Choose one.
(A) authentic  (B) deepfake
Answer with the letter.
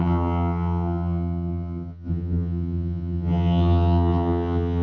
B